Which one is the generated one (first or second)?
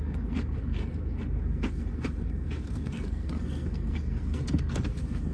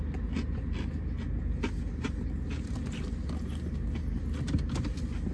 first